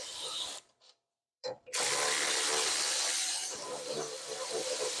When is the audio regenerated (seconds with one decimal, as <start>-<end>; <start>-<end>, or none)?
0.0-1.5; 3.2-5.0